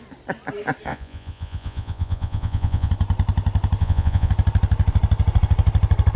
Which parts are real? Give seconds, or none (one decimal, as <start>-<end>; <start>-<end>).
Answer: 0.0-0.9; 2.9-3.8; 4.3-6.2